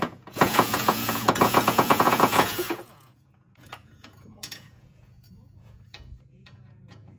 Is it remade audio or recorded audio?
remade